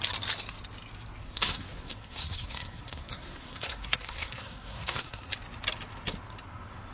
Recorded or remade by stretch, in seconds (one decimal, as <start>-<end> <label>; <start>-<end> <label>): 0.0-1.2 recorded; 1.2-5.3 remade; 5.3-6.9 recorded